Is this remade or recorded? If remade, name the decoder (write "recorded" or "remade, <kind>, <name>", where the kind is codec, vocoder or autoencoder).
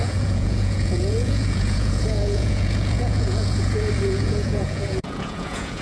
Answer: remade, vocoder, Vocos